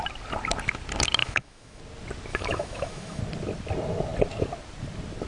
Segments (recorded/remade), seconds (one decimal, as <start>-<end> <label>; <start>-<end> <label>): 0.0-1.2 recorded; 1.2-1.8 remade; 1.8-2.3 recorded; 2.3-3.2 remade; 3.2-5.3 recorded